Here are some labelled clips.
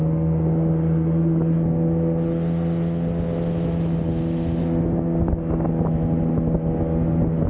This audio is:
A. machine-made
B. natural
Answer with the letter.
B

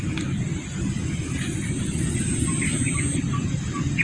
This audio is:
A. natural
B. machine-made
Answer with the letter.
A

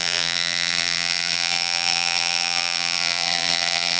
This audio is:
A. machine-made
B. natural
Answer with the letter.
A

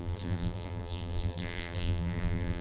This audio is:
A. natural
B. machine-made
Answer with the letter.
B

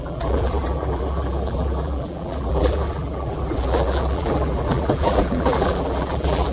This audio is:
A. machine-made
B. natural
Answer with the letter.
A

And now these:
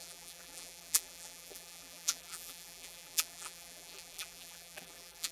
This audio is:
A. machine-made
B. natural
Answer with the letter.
A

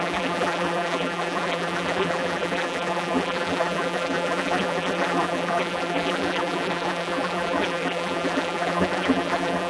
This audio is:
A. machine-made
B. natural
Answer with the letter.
A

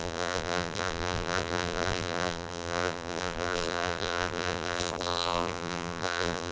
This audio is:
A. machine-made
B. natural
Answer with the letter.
A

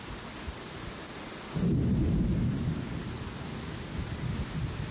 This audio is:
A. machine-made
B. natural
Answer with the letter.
B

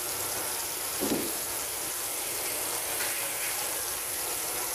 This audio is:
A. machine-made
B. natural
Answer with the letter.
A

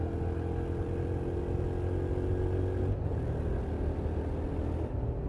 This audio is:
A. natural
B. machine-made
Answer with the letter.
A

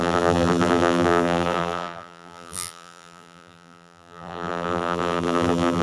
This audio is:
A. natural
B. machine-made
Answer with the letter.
B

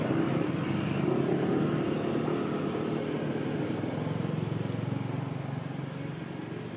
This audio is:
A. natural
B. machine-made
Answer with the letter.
A